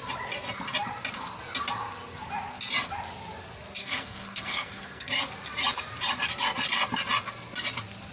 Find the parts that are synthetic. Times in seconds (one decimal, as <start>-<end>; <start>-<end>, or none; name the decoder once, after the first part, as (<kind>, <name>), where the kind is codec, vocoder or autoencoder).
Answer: 3.8-5.1 (codec, SNAC)

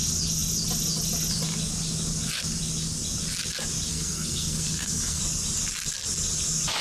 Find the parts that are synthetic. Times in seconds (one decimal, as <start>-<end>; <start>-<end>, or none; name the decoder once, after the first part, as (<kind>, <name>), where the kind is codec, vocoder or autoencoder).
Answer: 3.9-5.2 (codec, SNAC)

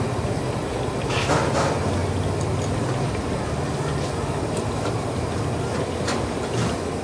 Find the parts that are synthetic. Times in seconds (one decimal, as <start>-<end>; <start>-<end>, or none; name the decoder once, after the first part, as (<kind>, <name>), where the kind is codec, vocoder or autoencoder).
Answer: none

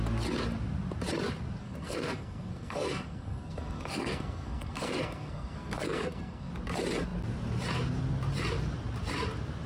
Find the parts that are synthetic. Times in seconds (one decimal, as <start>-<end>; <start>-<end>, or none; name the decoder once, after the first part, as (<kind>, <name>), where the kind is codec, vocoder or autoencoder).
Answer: 1.6-6.5 (codec, SNAC)